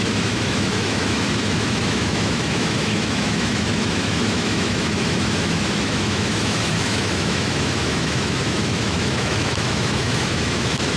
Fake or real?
fake